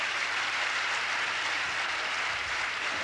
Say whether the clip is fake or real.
real